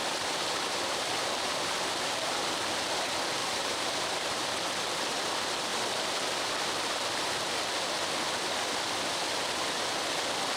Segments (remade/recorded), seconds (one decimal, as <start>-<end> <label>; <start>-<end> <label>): 0.0-1.7 remade; 1.7-3.4 recorded; 3.4-4.5 remade; 4.5-10.6 recorded